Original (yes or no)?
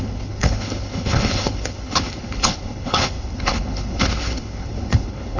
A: no